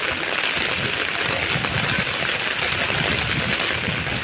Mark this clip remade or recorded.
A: recorded